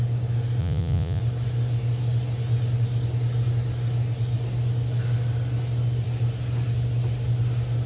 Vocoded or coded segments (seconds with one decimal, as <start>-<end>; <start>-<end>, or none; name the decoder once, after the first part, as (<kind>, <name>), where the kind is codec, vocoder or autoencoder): 0.6-1.2 (vocoder, Vocos)